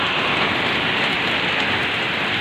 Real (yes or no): yes